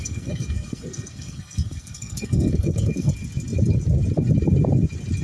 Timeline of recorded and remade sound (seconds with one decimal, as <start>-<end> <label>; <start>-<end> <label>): 0.0-3.1 remade; 3.1-5.2 recorded

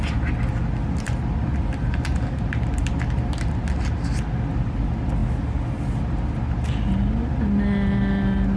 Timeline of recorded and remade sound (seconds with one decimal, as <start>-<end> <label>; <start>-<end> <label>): 0.0-8.6 recorded

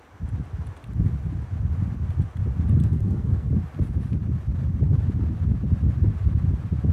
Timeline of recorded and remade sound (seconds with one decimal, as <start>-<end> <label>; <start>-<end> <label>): 0.0-2.8 recorded; 2.8-3.5 remade; 3.5-6.9 recorded

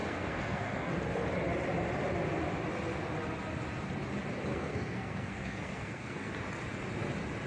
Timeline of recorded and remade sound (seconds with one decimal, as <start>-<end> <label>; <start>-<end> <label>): 0.0-0.9 remade; 0.9-4.5 recorded; 4.5-6.3 remade; 6.3-7.5 recorded

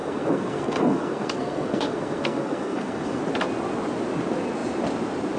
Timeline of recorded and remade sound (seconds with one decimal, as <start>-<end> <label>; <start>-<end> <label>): 0.0-3.2 remade; 3.2-5.4 recorded

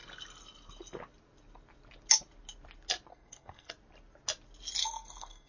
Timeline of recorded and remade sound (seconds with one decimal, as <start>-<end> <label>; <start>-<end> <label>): 0.0-3.1 recorded; 3.1-3.7 remade; 3.7-4.8 recorded; 4.8-5.5 remade

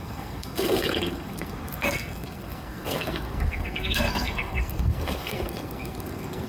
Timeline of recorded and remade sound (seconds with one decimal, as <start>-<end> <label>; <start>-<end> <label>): 0.0-6.5 remade

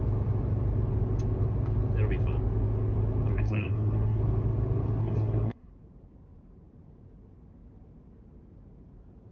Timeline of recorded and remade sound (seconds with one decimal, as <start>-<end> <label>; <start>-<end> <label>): 0.0-3.3 recorded; 3.3-4.2 remade; 4.2-5.0 recorded; 5.0-5.7 remade; 5.7-9.3 recorded